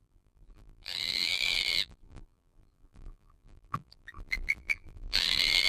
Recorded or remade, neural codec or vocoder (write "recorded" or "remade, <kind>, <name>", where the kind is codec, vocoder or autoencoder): remade, vocoder, BigVGAN v2